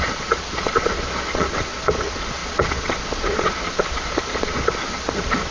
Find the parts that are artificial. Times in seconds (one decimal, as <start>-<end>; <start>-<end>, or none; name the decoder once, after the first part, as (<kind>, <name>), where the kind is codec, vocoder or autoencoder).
0.0-5.5 (vocoder, Vocos)